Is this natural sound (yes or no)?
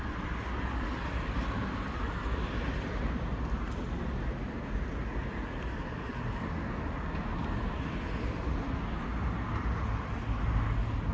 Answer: yes